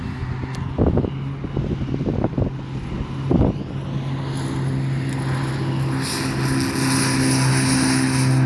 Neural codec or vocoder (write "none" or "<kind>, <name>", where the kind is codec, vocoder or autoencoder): none